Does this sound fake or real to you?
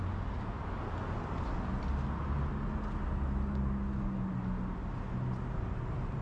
real